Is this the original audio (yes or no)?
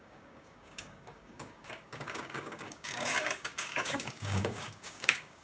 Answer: no